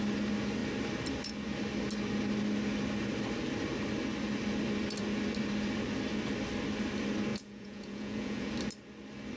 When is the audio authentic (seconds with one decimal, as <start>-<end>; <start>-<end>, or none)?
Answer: 0.0-7.3; 8.5-9.4